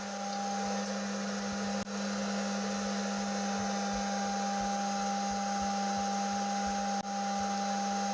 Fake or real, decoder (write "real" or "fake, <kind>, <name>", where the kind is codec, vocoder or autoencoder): real